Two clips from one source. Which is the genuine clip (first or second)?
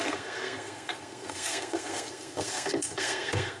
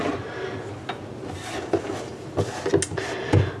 second